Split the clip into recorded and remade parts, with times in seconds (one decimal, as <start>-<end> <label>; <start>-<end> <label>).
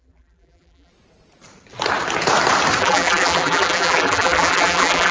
0.0-0.9 remade; 0.9-2.8 recorded; 2.8-5.1 remade